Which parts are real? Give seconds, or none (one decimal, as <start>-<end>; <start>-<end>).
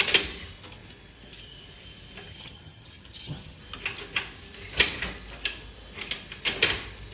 0.0-2.3; 3.6-7.1